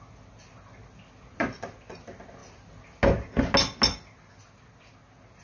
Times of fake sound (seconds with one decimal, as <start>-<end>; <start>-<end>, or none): none